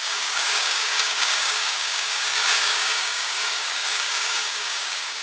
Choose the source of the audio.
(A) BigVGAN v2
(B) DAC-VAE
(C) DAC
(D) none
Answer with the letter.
C